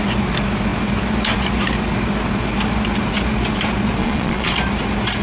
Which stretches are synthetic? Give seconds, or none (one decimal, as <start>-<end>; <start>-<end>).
4.0-4.5